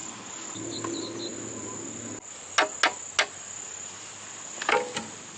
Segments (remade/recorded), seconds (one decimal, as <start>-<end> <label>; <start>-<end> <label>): 0.0-5.4 recorded